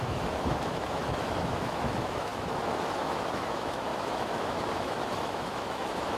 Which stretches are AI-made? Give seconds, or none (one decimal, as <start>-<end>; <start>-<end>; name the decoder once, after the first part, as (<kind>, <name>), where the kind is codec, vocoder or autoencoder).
0.0-6.2 (autoencoder, DAC-VAE)